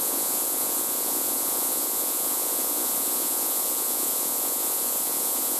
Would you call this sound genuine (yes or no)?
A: no